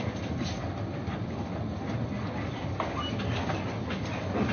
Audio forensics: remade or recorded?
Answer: recorded